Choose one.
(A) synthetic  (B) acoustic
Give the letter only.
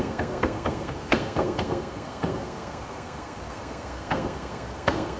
A